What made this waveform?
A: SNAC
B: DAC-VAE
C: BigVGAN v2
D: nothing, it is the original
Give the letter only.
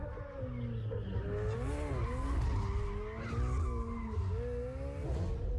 D